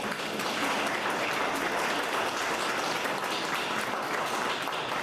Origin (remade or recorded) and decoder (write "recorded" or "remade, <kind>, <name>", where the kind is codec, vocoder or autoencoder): recorded